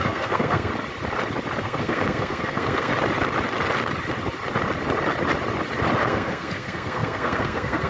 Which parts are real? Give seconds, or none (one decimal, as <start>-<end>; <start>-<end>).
0.7-1.6; 2.9-6.0